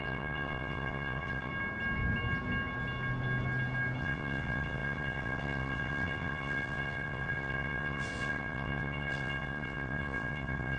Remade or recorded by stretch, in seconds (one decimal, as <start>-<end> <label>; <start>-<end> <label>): 0.0-1.5 remade; 1.5-4.0 recorded; 4.0-10.8 remade